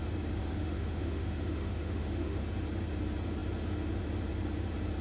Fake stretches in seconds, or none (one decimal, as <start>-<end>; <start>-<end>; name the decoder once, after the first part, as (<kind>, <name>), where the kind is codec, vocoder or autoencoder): 0.4-2.4 (autoencoder, DAC-VAE)